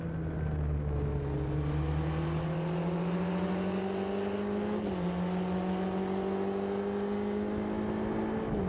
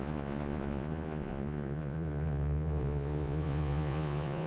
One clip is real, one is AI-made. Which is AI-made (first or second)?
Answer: second